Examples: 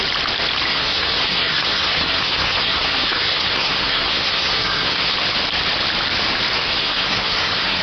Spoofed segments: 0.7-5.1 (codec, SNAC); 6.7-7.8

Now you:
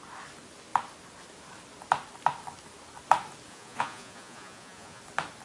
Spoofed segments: 3.5-5.0 (vocoder, Vocos)

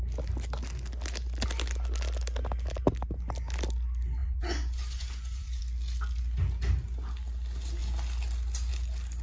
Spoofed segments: 4.2-5.6 (vocoder, Vocos)

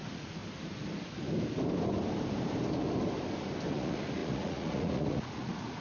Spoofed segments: 0.0-0.4 (vocoder, Vocos); 3.7-5.8